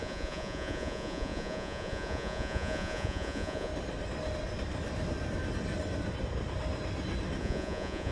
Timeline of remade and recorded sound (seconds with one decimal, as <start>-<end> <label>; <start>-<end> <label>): 0.0-3.7 remade; 3.7-7.4 recorded; 7.4-8.1 remade

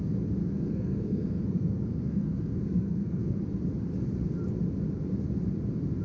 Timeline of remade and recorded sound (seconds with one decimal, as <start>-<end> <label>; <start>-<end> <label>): 0.0-0.4 recorded; 0.4-3.4 remade; 3.4-6.0 recorded

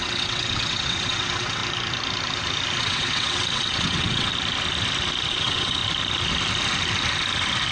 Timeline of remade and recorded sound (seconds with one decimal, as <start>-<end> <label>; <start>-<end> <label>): 0.0-1.6 remade; 1.6-2.8 recorded; 2.8-4.3 remade; 4.3-5.3 recorded; 5.3-5.8 remade; 5.8-7.7 recorded

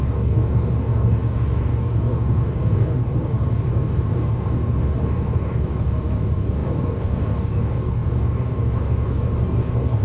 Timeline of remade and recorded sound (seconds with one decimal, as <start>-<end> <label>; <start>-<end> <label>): 0.0-10.0 remade

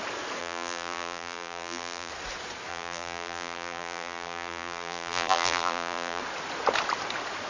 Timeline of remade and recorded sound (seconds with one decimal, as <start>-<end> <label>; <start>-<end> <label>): 0.0-0.4 recorded; 0.4-2.1 remade; 2.1-2.7 recorded; 2.7-6.2 remade; 6.2-7.5 recorded

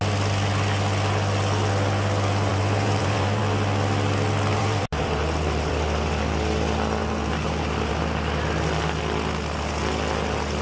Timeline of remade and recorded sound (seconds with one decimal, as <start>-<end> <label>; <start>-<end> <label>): 0.0-2.5 recorded; 2.5-3.4 remade; 3.4-4.5 recorded; 4.5-5.7 remade; 5.7-7.0 recorded; 7.0-7.9 remade; 7.9-10.6 recorded

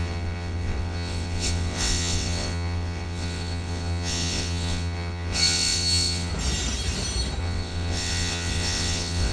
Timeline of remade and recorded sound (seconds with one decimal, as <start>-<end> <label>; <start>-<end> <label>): 0.0-6.3 remade; 6.3-7.4 recorded; 7.4-9.3 remade

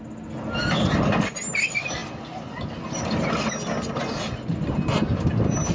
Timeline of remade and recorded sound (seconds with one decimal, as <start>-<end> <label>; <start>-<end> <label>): 0.0-5.7 recorded